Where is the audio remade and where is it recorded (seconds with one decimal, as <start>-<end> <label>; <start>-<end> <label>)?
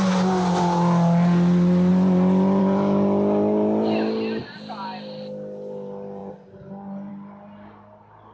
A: 0.0-8.3 recorded